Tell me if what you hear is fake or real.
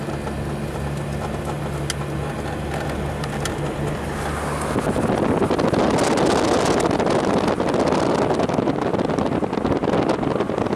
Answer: real